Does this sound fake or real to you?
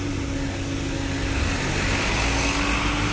real